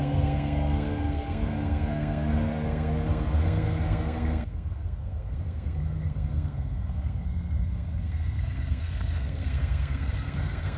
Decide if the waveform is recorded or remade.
remade